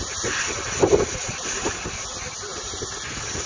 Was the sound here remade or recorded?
recorded